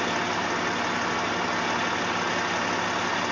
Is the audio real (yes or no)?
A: yes